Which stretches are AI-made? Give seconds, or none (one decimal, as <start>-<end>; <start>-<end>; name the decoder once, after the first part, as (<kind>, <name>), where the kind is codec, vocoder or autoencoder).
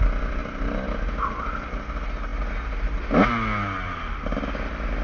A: none